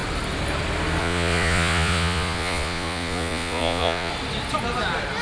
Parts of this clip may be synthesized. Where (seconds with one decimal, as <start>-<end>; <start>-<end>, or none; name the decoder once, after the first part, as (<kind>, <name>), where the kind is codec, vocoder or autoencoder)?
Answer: 1.0-4.1 (vocoder, Vocos)